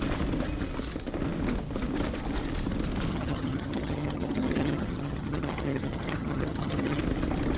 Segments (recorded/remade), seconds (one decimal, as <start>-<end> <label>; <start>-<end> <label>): 0.0-3.1 recorded; 3.1-7.0 remade; 7.0-7.6 recorded